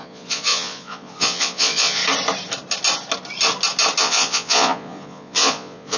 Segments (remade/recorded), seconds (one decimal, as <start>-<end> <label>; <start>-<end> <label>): 0.0-2.0 remade; 2.0-4.0 recorded; 4.0-6.0 remade